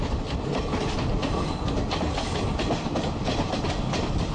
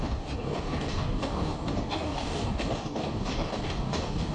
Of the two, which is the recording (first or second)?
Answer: first